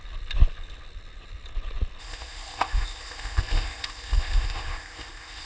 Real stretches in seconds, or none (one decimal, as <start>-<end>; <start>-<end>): 0.0-2.0